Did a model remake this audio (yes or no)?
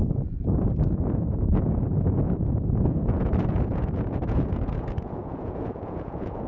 yes